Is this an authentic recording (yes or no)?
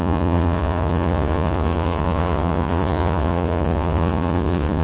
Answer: no